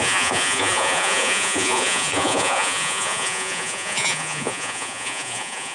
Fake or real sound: fake